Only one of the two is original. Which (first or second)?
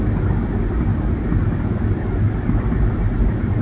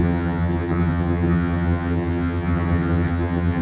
first